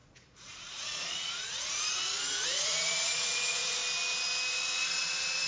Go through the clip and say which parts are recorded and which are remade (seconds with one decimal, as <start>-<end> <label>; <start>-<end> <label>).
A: 0.0-3.8 remade; 3.8-4.5 recorded; 4.5-5.5 remade